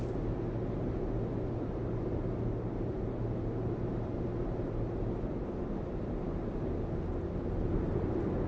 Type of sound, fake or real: real